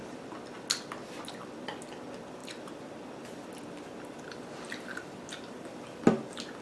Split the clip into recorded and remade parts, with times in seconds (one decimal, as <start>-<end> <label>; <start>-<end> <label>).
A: 0.0-6.6 recorded